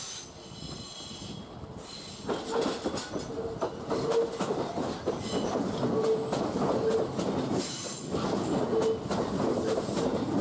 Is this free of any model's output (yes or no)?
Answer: yes